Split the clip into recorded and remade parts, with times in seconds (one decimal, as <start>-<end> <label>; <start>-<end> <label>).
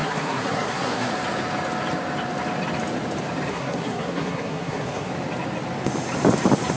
0.0-1.1 remade; 1.1-3.5 recorded; 3.5-5.1 remade; 5.1-6.8 recorded